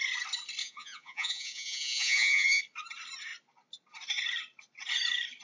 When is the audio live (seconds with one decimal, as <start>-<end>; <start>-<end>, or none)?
0.0-0.6; 2.6-5.4